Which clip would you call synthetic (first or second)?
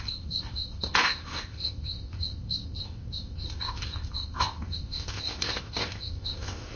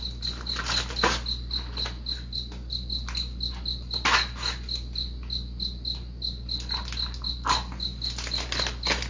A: first